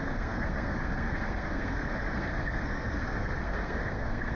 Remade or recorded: remade